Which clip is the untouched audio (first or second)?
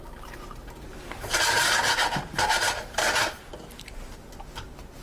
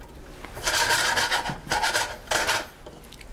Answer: second